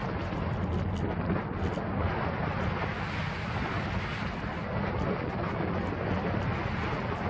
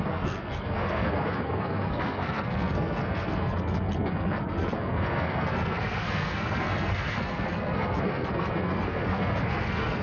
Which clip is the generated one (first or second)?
second